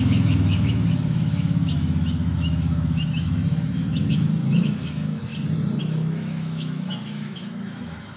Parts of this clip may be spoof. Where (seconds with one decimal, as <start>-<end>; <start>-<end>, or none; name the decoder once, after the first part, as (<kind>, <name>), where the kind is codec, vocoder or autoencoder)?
0.0-5.3 (autoencoder, DAC-VAE); 5.8-8.2